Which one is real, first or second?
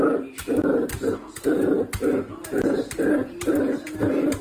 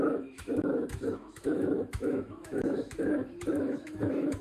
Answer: first